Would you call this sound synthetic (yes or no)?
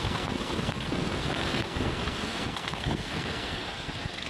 yes